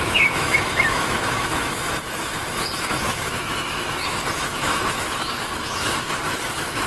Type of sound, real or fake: fake